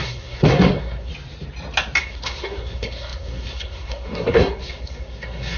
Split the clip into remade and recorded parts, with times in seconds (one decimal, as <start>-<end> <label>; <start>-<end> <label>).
0.0-1.1 remade; 1.1-2.0 recorded; 2.0-5.6 remade